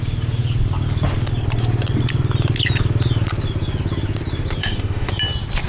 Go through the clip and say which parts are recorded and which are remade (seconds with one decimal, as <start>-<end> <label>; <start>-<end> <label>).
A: 0.0-4.6 recorded; 4.6-5.1 remade; 5.1-5.7 recorded